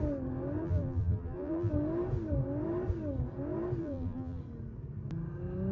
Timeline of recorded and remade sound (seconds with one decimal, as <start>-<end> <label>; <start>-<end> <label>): 0.0-0.6 recorded; 0.6-1.7 remade; 1.7-3.8 recorded; 3.8-4.4 remade; 4.4-5.7 recorded